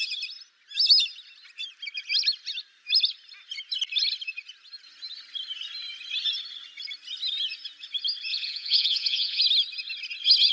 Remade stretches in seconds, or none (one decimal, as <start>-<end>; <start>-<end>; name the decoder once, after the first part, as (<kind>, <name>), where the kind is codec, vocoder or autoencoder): 8.3-9.4 (vocoder, Vocos)